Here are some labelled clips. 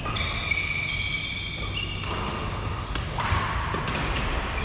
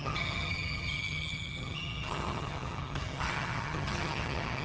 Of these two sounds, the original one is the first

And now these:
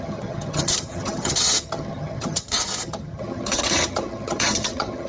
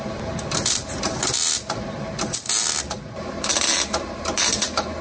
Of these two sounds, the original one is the second